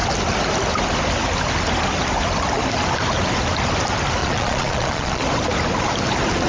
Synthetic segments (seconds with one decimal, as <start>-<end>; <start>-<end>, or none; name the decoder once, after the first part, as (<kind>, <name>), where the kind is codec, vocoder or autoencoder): 4.2-5.2 (vocoder, Vocos)

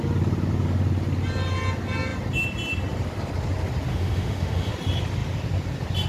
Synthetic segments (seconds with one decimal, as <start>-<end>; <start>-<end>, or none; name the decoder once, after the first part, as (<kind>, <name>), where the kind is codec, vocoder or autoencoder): 3.9-4.7 (autoencoder, DAC-VAE)